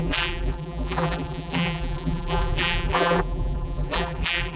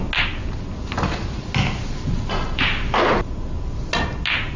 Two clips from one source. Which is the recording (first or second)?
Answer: second